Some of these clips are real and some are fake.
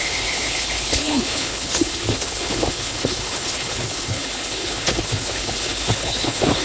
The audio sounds fake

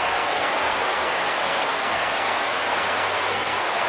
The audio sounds fake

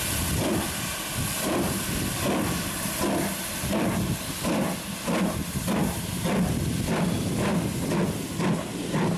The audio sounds real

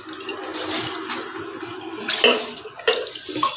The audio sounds real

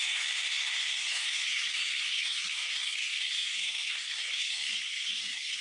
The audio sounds fake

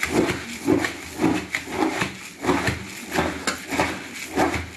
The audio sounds real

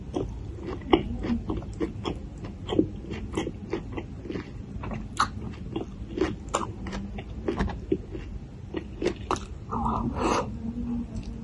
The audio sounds real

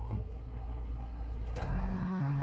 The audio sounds fake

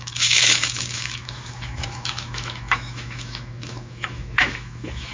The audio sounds fake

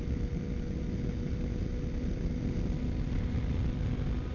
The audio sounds real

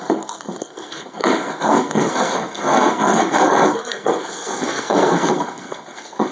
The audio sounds fake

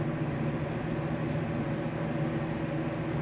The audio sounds real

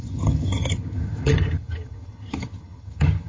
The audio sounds fake